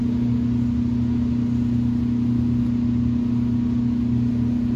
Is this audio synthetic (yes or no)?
no